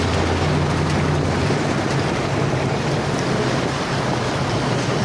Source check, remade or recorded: recorded